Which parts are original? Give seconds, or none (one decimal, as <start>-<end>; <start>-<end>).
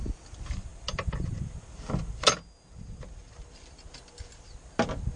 0.0-5.2